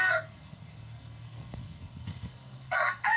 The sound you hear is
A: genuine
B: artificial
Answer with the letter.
B